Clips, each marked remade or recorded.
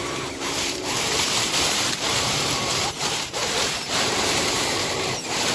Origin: remade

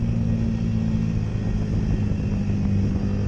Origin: recorded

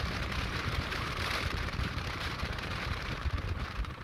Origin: remade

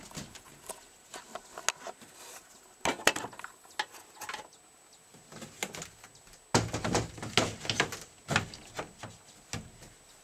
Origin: recorded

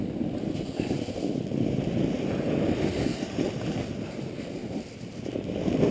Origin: recorded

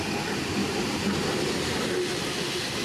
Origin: recorded